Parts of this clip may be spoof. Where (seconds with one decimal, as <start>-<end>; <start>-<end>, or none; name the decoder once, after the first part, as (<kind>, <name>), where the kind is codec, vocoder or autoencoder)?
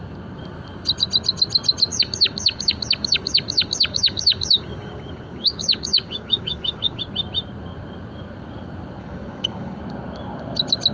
1.9-7.0 (codec, DAC); 9.0-9.8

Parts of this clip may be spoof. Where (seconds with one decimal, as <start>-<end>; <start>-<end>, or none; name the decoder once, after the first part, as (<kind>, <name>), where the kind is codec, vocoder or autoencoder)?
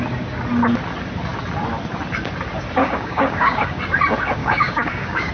2.8-3.8 (codec, DAC); 4.4-5.3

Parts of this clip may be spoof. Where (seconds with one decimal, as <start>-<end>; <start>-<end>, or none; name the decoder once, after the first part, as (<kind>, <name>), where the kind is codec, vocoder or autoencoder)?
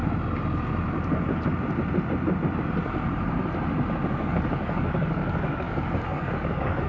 4.1-6.9 (codec, DAC)